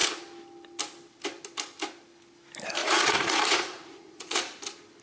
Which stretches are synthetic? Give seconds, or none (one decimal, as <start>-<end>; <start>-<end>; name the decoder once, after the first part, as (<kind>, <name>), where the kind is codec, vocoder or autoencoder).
2.8-4.4 (vocoder, Vocos)